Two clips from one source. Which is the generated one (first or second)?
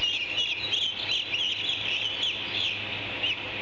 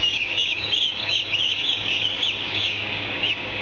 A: second